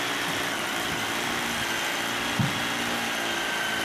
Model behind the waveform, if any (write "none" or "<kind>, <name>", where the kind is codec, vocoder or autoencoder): none